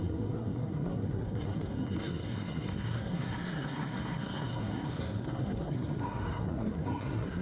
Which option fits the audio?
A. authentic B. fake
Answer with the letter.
B